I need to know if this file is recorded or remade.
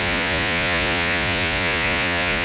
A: remade